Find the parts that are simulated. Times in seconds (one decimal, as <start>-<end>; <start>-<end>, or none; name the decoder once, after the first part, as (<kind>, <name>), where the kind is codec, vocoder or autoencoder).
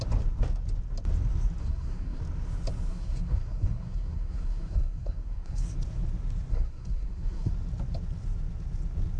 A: 1.6-2.2 (codec, SNAC); 2.9-5.6; 6.5-7.5